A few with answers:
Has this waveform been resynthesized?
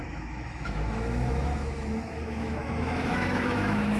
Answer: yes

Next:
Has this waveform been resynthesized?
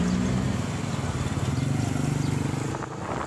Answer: no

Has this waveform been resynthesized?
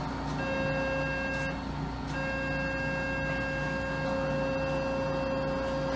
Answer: no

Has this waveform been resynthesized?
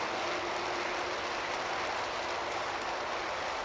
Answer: no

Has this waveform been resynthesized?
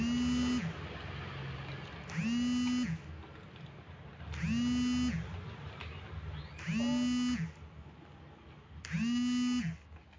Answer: no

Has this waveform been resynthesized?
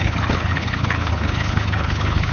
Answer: yes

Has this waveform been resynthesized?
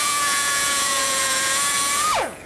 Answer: yes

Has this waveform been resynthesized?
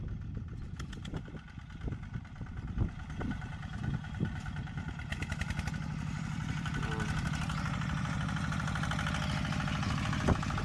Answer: no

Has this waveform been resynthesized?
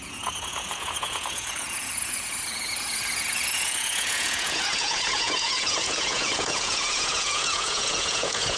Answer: yes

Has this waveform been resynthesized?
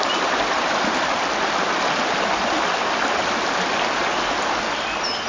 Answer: no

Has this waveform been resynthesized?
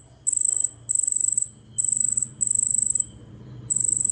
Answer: no